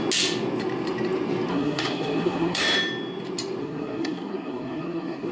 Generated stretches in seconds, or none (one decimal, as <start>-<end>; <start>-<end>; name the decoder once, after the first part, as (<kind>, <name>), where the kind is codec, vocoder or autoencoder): 1.5-2.6 (codec, SNAC); 3.6-5.3

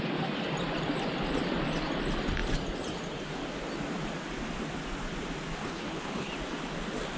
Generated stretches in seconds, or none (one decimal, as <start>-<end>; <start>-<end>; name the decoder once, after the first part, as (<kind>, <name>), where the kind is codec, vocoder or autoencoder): 5.6-6.3 (codec, HILCodec)

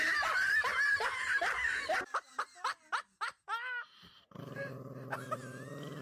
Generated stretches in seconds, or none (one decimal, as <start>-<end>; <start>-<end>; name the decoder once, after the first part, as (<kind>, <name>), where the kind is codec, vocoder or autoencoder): 0.0-6.0 (vocoder, BigVGAN v2)

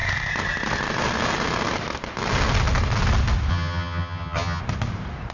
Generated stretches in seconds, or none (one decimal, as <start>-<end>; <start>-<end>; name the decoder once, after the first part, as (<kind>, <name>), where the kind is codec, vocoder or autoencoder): 3.5-4.6 (vocoder, HiFi-GAN)